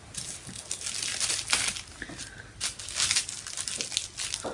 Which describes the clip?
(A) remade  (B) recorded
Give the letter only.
B